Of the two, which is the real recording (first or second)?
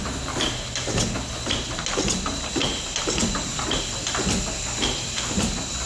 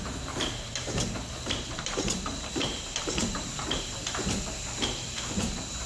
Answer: first